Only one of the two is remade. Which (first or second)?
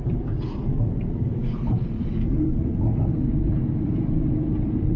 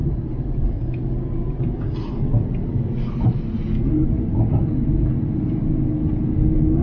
first